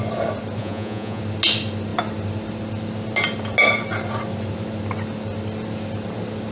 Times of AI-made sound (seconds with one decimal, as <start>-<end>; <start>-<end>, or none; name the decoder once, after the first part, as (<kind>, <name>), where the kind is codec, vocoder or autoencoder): 0.6-1.2 (vocoder, Vocos)

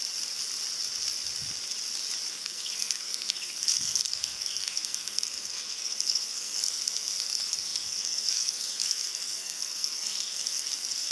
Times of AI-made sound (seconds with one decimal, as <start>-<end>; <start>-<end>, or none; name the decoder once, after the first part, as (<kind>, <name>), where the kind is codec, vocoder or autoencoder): 2.3-11.1 (codec, SNAC)

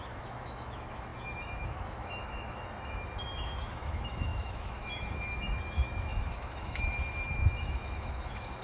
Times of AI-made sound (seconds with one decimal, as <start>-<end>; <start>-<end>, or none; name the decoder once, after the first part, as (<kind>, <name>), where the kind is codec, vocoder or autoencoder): 0.0-8.6 (autoencoder, DAC-VAE)

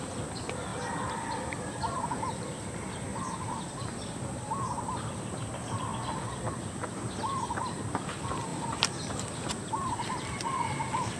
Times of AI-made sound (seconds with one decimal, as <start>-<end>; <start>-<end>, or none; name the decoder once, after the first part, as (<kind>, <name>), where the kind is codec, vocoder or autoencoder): 0.0-5.9 (vocoder, BigVGAN v2); 6.9-11.2

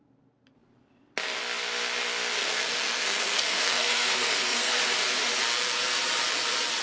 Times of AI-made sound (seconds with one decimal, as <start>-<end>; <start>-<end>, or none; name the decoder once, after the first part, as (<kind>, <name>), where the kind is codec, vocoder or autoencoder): 2.4-4.8 (codec, SNAC)

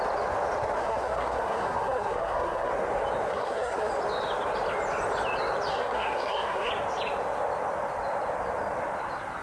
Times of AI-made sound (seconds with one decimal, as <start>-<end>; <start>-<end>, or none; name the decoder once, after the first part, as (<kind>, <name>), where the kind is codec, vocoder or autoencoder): 0.8-2.7 (codec, SNAC); 3.3-3.9; 5.7-6.7